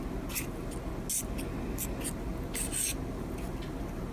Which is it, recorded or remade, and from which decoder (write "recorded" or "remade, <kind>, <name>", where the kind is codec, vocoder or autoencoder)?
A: recorded